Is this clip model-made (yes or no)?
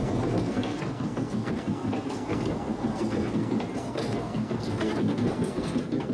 yes